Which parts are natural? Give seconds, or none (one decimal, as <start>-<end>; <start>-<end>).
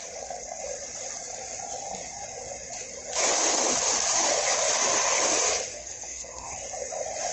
0.0-5.7; 6.5-7.3